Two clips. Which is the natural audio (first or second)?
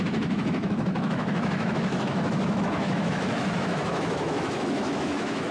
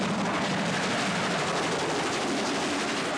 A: second